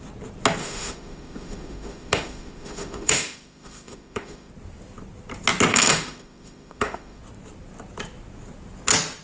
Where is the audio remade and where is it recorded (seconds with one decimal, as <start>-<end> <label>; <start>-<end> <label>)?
0.0-0.6 recorded; 0.6-4.5 remade; 4.5-5.7 recorded; 5.7-7.2 remade; 7.2-9.2 recorded